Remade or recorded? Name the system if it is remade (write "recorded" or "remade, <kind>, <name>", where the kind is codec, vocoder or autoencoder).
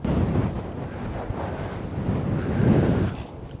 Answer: recorded